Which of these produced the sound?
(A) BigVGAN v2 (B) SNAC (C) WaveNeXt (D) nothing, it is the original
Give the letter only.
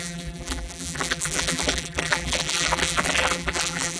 A